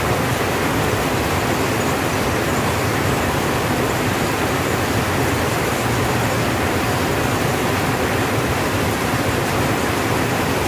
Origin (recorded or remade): remade